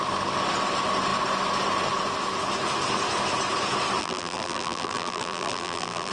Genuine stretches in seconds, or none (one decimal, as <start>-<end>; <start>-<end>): 0.0-4.0